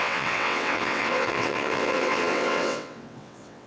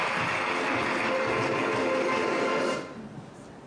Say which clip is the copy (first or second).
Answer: first